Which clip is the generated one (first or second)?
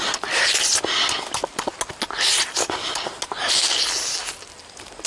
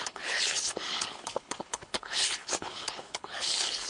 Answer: second